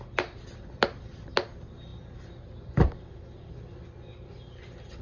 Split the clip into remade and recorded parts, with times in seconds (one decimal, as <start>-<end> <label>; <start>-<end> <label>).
0.0-5.0 recorded